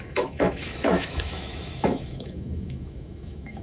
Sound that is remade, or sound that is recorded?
remade